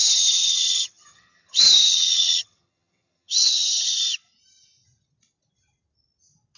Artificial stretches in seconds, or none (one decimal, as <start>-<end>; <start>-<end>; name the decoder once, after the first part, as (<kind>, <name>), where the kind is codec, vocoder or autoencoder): 0.0-4.0 (vocoder, HiFi-GAN)